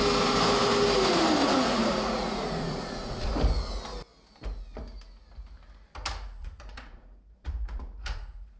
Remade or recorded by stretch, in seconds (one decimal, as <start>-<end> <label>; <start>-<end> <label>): 0.0-1.4 recorded; 1.4-3.3 remade; 3.3-6.4 recorded; 6.4-8.6 remade